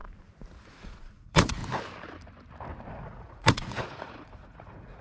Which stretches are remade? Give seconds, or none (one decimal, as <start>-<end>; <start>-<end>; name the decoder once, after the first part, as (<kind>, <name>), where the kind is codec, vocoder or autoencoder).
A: 0.7-1.6 (vocoder, Vocos); 2.9-5.0

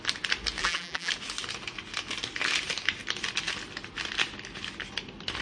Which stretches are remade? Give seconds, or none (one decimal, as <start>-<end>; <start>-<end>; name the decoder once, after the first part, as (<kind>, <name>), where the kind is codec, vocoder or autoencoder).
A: 0.6-1.1 (vocoder, BigVGAN v2)

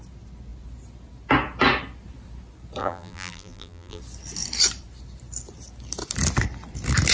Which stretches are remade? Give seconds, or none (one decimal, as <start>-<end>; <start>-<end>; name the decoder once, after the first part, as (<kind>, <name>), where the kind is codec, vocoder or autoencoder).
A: 2.8-4.0 (vocoder, BigVGAN v2)

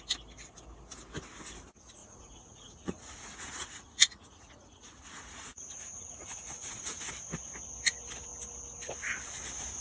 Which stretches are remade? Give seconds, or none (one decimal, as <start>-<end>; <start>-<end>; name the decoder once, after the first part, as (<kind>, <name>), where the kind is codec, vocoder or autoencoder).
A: 2.0-7.0 (vocoder, Vocos)

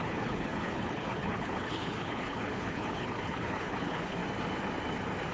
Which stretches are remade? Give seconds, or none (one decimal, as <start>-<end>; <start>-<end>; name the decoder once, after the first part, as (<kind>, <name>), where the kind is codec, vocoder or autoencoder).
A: 0.0-4.2 (codec, HILCodec)

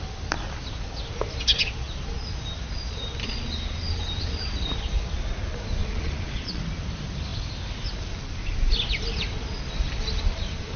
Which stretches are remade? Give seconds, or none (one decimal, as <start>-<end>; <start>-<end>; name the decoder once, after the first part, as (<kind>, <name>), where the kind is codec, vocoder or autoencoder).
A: 5.8-6.6 (vocoder, Vocos)

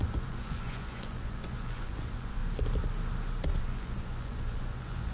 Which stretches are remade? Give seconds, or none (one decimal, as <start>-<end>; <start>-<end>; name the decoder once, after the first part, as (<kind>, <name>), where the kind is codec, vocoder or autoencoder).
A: 0.0-2.4 (vocoder, Vocos); 3.6-5.1

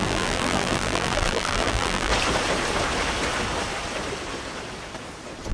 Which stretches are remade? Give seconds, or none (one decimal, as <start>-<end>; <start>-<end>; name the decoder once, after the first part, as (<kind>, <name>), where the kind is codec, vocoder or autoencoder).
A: 0.0-2.1 (vocoder, BigVGAN v2)